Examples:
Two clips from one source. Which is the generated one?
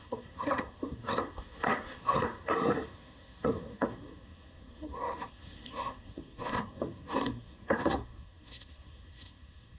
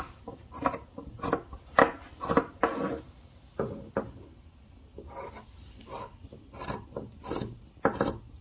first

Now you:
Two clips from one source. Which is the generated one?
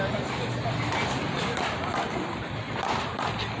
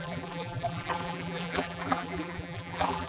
second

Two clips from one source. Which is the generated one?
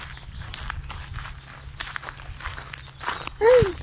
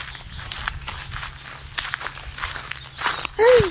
first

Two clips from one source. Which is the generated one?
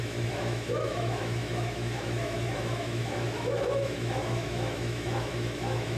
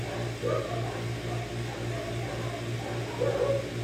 first